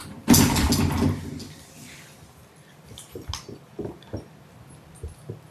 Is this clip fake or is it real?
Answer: real